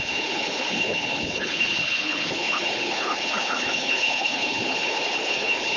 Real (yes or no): no